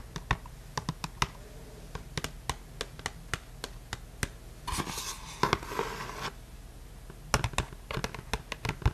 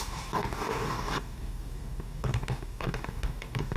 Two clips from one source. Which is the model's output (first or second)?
second